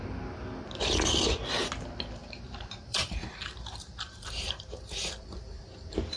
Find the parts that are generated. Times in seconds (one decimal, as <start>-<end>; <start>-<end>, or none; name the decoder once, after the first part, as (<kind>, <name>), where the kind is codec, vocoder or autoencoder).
2.2-6.2 (vocoder, BigVGAN v2)